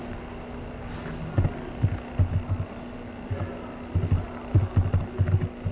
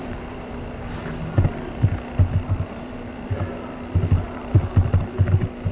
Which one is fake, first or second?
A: second